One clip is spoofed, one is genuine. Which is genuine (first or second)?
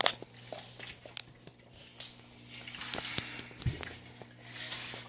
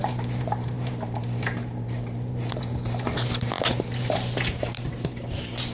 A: first